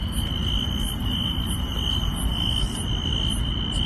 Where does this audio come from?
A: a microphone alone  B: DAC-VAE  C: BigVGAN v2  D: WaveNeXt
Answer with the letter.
A